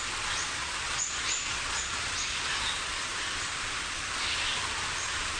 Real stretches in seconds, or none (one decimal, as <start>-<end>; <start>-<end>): 0.0-0.6; 3.2-5.4